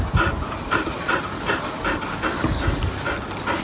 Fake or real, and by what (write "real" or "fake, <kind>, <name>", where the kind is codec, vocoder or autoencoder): real